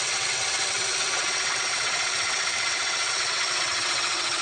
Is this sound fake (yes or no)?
yes